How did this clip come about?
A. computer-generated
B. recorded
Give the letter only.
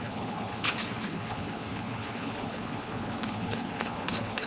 A